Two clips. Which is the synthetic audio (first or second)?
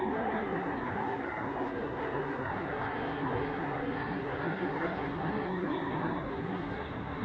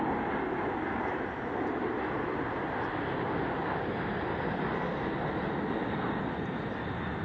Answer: first